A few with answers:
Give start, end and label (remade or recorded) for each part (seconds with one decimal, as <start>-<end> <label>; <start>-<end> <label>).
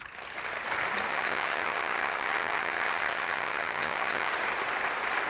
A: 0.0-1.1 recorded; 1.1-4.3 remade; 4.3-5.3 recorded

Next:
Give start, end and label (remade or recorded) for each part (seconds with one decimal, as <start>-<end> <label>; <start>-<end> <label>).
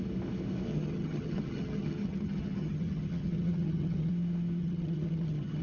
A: 0.0-0.7 recorded; 0.7-4.1 remade; 4.1-4.6 recorded; 4.6-5.6 remade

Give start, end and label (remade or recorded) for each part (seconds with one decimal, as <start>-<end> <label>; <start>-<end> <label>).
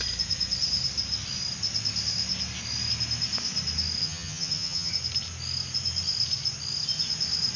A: 0.0-4.0 recorded; 4.0-4.9 remade; 4.9-7.6 recorded